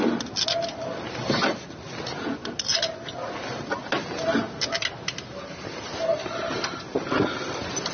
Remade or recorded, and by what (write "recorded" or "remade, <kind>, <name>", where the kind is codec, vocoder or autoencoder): recorded